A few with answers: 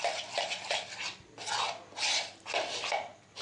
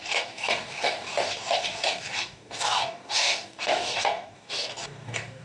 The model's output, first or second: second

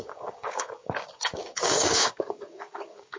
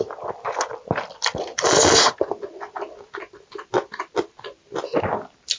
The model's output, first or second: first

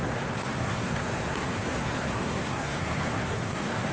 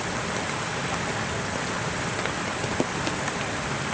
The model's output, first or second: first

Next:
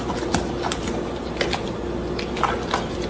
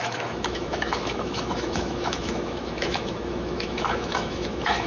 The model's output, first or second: second